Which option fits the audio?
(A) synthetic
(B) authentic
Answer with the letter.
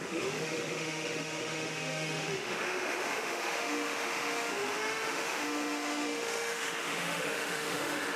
A